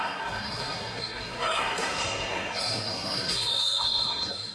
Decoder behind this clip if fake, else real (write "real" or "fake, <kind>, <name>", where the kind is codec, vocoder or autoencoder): fake, codec, SNAC